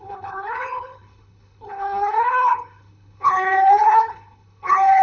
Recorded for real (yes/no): no